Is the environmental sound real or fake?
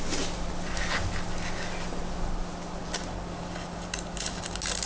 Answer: real